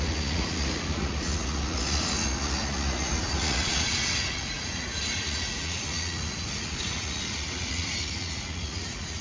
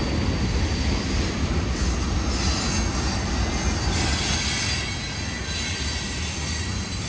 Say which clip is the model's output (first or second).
first